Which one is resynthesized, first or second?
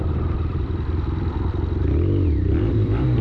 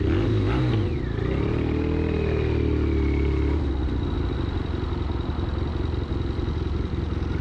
first